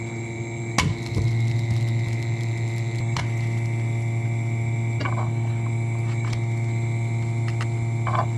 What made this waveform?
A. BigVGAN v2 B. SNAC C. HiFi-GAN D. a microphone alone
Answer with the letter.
D